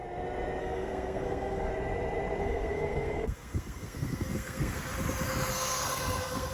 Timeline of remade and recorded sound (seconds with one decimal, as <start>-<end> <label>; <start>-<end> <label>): 0.0-0.6 recorded; 0.6-1.7 remade; 1.7-2.4 recorded; 2.4-4.9 remade; 4.9-5.5 recorded; 5.5-6.5 remade